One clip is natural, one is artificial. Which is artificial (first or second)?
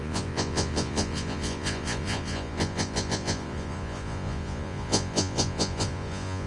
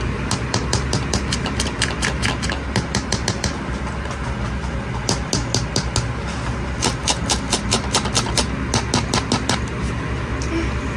first